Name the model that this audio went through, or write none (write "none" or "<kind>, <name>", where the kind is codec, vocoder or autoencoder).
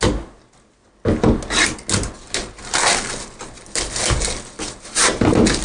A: none